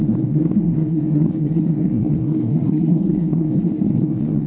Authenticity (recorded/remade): remade